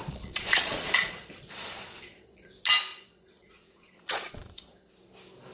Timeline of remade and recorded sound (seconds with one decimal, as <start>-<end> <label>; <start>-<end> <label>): 0.0-2.5 remade; 2.5-2.9 recorded; 2.9-4.9 remade; 4.9-5.5 recorded